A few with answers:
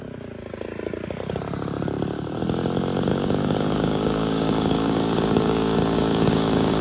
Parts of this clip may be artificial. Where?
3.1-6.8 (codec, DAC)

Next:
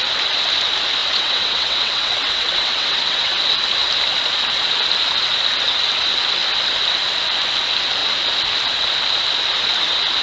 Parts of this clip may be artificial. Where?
1.0-3.3 (vocoder, WaveNeXt)

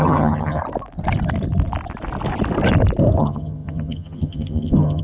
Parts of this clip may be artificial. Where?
0.0-0.6 (vocoder, HiFi-GAN); 3.2-5.0

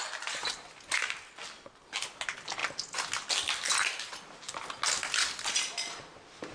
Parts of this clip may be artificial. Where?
none

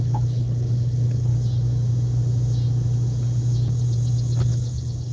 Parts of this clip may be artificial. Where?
0.0-1.3 (codec, HILCodec); 4.4-5.1

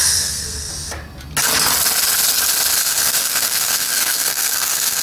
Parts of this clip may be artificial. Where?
0.0-0.7 (codec, SNAC); 2.8-5.0